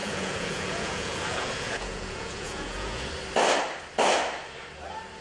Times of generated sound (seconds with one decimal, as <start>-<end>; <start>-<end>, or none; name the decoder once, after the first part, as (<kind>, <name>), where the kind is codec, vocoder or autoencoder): 0.0-3.1 (vocoder, Vocos)